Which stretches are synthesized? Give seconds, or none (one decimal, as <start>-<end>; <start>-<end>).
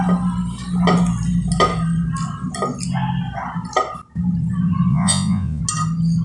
4.9-5.6